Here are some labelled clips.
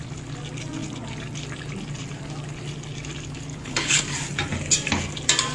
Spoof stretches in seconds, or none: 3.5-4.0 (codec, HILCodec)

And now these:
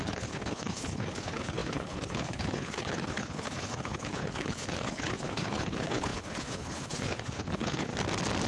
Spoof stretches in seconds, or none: 0.0-7.9 (codec, HILCodec)

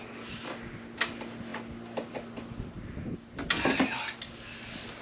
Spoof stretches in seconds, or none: none

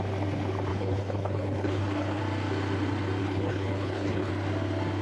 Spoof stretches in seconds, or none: 0.7-2.2 (codec, HILCodec); 3.2-4.3

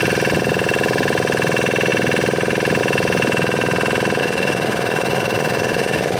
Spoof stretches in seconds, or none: 4.2-6.2 (autoencoder, DAC-VAE)

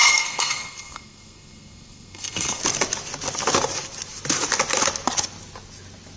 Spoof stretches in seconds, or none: 0.0-2.6 (codec, SNAC)